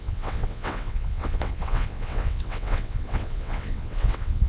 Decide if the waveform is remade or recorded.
remade